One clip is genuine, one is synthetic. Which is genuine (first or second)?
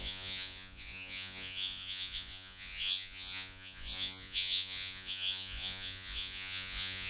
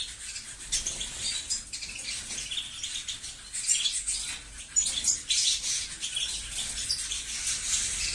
second